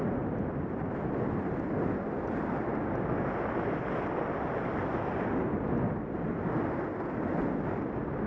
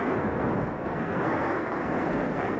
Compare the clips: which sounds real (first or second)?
first